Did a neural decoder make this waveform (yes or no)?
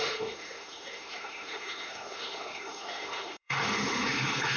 yes